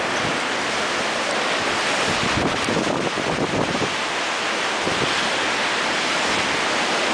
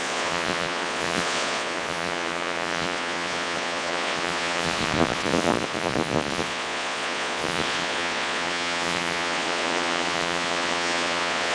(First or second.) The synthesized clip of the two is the second